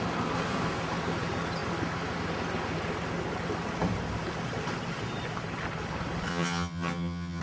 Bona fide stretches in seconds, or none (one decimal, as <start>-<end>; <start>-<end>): 0.0-6.3